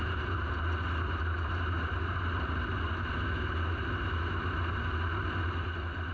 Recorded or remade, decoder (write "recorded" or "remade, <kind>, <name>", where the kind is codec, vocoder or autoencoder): recorded